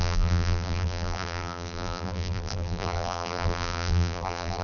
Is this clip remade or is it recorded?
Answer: remade